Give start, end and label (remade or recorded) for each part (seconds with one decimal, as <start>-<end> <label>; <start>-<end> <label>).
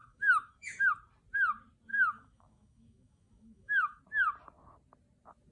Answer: 0.0-0.9 remade; 0.9-1.9 recorded; 1.9-4.0 remade; 4.0-5.5 recorded